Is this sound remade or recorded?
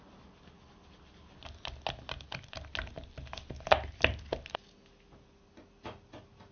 recorded